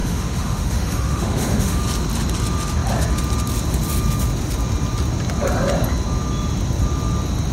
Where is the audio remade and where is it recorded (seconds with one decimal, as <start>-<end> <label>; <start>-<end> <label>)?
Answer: 0.0-1.8 remade; 1.8-7.5 recorded